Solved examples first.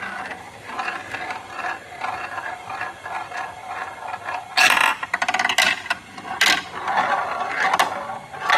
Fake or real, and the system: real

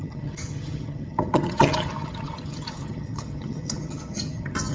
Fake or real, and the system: fake, vocoder, HiFi-GAN